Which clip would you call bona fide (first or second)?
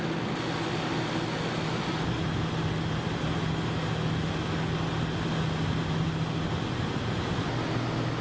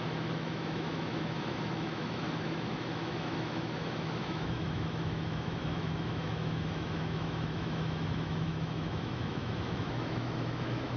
first